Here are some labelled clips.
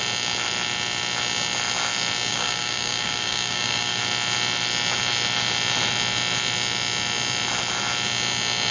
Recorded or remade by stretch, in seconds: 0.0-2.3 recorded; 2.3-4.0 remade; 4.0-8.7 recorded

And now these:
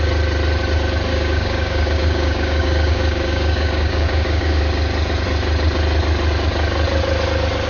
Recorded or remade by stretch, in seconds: 0.0-1.1 recorded; 1.1-4.6 remade; 4.6-7.7 recorded

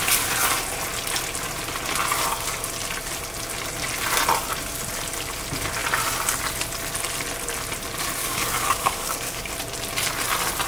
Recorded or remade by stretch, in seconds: 0.0-8.2 recorded; 8.2-9.5 remade; 9.5-10.7 recorded

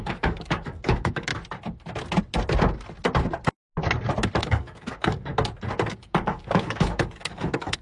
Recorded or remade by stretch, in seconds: 0.0-1.3 remade; 1.3-4.4 recorded; 4.4-5.3 remade; 5.3-5.9 recorded; 5.9-7.8 remade

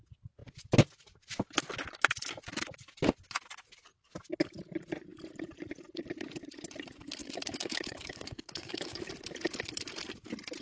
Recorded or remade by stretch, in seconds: 0.0-7.2 recorded; 7.2-9.1 remade; 9.1-10.6 recorded

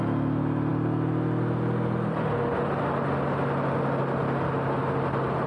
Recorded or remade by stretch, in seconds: 0.0-5.5 recorded